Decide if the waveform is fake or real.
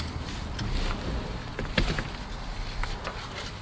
real